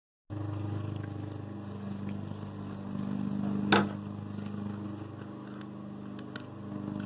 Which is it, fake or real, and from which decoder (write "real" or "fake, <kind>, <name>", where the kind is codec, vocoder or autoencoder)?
real